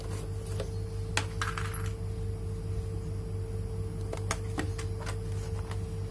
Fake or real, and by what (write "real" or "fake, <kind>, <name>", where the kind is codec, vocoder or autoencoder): real